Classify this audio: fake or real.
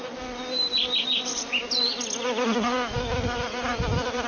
real